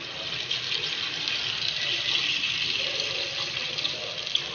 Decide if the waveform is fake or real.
real